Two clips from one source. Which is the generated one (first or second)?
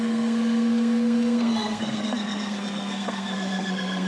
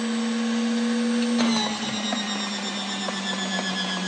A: first